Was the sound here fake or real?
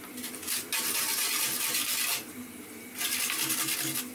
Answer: real